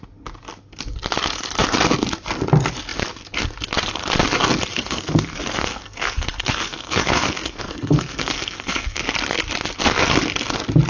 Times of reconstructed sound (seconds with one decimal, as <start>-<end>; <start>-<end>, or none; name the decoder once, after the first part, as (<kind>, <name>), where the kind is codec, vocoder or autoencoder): 4.7-9.0 (codec, SNAC)